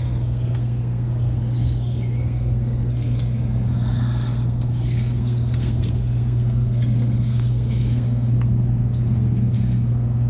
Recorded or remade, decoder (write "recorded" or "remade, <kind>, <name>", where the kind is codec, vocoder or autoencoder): remade, codec, SNAC